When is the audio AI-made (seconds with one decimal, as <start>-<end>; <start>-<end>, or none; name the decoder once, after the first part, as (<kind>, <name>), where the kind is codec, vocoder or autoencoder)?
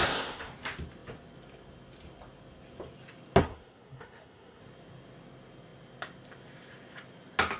0.0-0.5 (codec, SNAC); 3.4-4.6